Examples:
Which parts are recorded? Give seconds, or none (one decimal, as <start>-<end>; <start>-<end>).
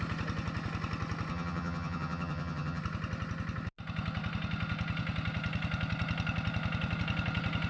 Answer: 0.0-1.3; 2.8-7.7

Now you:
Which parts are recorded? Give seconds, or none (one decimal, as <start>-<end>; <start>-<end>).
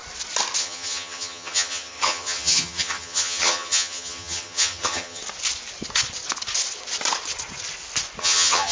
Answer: 0.0-0.6; 5.2-8.2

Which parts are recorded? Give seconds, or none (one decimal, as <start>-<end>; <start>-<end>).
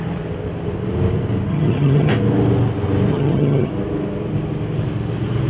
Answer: 0.0-1.5; 2.1-3.1; 3.7-5.5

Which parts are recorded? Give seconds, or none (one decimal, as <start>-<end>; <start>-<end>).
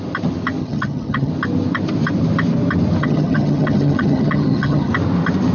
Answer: 0.0-0.6; 1.3-3.0; 4.9-5.5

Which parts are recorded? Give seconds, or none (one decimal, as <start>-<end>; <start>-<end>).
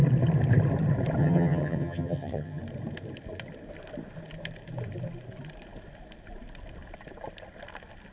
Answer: 0.0-1.2; 2.6-8.1